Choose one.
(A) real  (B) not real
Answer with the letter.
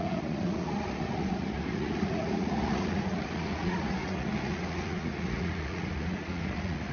B